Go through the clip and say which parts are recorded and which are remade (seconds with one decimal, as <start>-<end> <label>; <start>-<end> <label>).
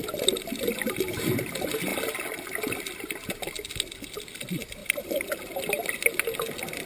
0.0-4.8 recorded; 4.8-5.4 remade; 5.4-6.9 recorded